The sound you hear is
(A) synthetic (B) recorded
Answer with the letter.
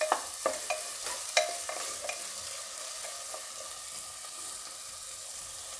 B